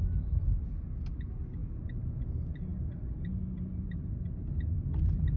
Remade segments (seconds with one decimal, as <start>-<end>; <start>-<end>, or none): none

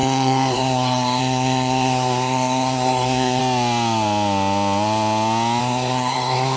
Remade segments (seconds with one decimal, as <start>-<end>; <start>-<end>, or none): 0.0-3.4; 5.6-6.6

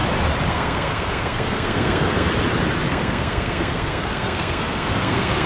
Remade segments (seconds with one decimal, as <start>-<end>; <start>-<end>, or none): 0.5-2.3; 2.9-5.5

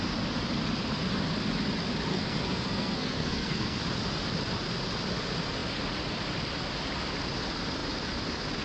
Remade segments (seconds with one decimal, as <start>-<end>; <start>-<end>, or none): 2.1-3.8

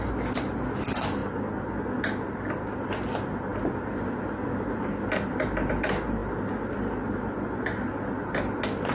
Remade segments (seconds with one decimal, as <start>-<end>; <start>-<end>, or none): none